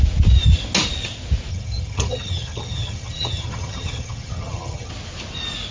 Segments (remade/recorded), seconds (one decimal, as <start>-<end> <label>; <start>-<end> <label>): 0.0-1.5 recorded; 1.5-4.9 remade; 4.9-5.7 recorded